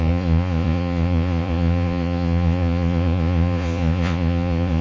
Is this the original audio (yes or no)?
no